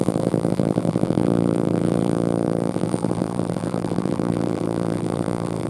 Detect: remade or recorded remade